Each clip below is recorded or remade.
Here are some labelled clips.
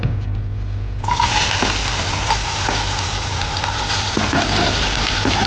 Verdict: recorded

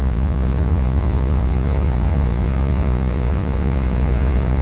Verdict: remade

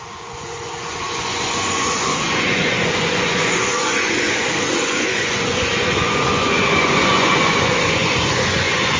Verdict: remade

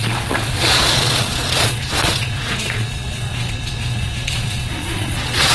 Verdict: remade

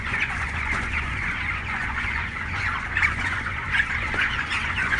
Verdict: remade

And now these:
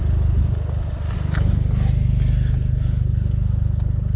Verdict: recorded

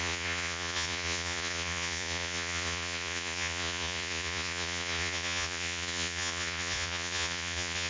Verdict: remade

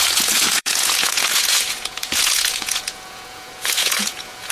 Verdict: remade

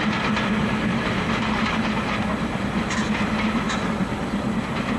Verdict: recorded